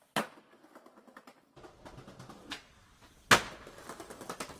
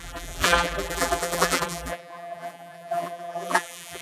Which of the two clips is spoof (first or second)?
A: second